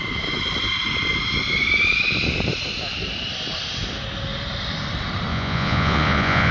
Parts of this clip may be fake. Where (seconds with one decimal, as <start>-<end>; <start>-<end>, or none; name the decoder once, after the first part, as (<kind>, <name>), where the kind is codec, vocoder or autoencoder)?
5.3-6.5 (vocoder, Vocos)